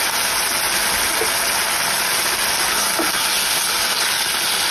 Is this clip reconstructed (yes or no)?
no